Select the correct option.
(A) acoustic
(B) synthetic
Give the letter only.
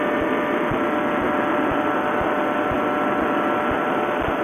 A